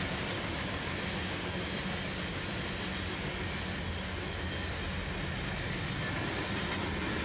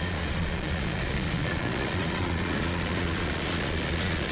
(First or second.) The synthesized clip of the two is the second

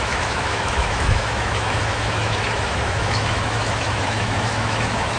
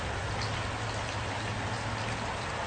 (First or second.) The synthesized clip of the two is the first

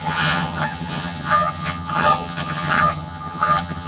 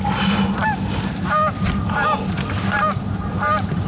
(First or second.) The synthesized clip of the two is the first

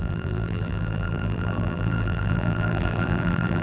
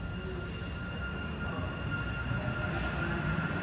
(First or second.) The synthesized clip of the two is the first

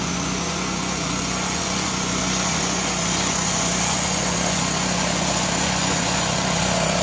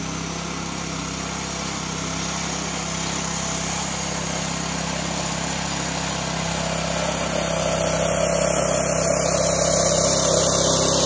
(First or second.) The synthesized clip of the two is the first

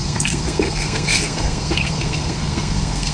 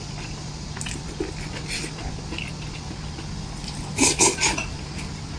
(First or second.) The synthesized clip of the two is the first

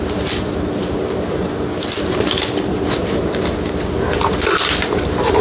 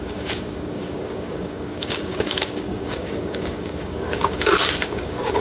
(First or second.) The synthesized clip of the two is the second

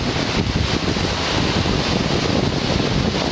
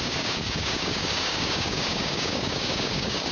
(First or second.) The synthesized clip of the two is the second